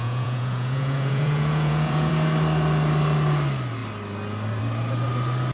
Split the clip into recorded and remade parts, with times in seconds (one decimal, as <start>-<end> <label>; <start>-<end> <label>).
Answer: 0.0-2.1 remade; 2.1-5.5 recorded